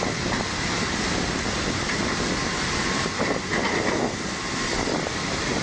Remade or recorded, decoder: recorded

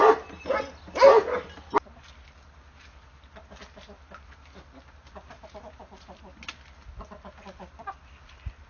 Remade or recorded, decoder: recorded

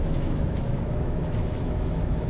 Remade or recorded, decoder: remade, autoencoder, DAC-VAE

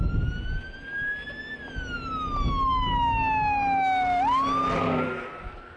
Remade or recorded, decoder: recorded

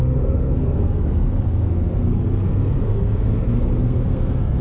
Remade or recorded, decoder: remade, codec, SNAC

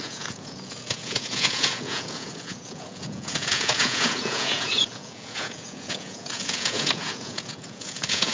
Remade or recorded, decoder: remade, vocoder, Vocos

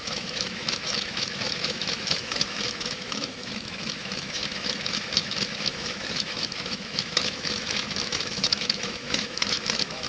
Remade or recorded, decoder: remade, autoencoder, DAC-VAE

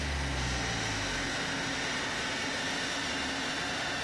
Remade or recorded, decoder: recorded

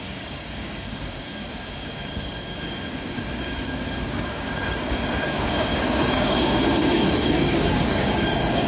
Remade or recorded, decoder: remade, codec, DAC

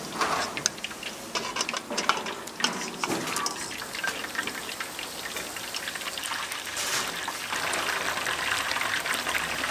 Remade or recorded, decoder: recorded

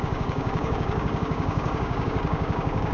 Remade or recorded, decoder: remade, codec, DAC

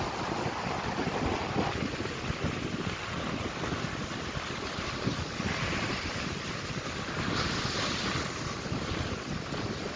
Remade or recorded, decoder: recorded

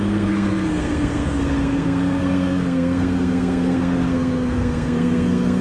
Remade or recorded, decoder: remade, codec, SNAC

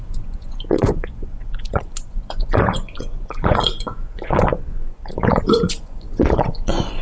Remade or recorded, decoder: remade, vocoder, Vocos